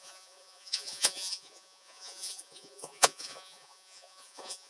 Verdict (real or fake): fake